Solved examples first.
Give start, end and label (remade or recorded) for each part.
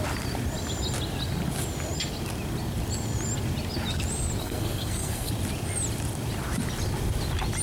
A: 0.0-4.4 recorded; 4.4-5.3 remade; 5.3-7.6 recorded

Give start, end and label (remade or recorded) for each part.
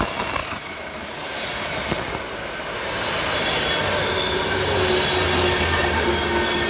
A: 0.0-0.4 recorded; 0.4-1.0 remade; 1.0-6.7 recorded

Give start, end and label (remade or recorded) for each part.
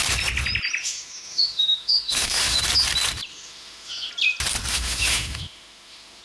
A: 0.0-0.8 recorded; 0.8-2.6 remade; 2.6-3.3 recorded; 3.3-4.1 remade; 4.1-4.7 recorded; 4.7-6.2 remade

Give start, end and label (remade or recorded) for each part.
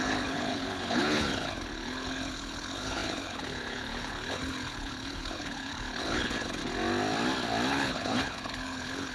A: 0.0-6.6 remade; 6.6-7.7 recorded; 7.7-9.1 remade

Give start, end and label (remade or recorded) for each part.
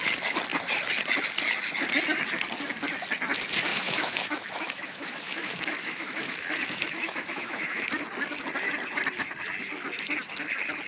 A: 0.0-3.7 recorded; 3.7-7.8 remade; 7.8-10.9 recorded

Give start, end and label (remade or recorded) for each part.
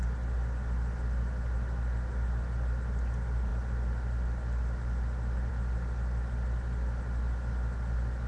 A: 0.0-3.5 recorded; 3.5-5.5 remade; 5.5-8.3 recorded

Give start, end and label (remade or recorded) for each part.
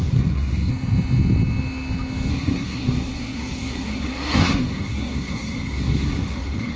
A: 0.0-0.7 remade; 0.7-2.3 recorded; 2.3-6.8 remade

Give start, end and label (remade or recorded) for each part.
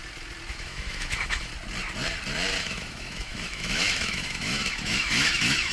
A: 0.0-0.5 recorded; 0.5-1.5 remade; 1.5-2.6 recorded; 2.6-5.7 remade